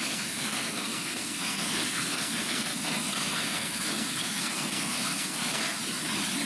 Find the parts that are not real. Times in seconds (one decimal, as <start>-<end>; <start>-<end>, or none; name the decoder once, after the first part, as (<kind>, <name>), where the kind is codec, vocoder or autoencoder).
0.0-5.8 (codec, SNAC)